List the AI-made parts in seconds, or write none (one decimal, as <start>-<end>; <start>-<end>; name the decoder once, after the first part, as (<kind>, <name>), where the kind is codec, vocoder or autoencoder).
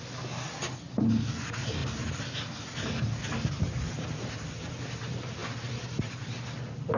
none